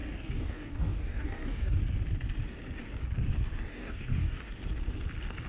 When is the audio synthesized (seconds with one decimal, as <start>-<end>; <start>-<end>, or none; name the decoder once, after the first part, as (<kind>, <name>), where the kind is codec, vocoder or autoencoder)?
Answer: 0.0-1.8 (codec, DAC); 3.7-4.5